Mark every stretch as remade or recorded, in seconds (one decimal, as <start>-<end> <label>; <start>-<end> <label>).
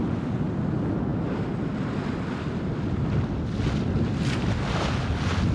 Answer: 0.0-5.5 recorded